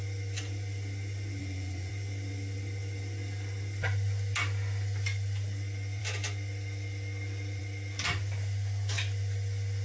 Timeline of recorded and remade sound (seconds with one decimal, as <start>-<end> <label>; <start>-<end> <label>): 0.0-1.4 recorded; 1.4-1.9 remade; 1.9-9.8 recorded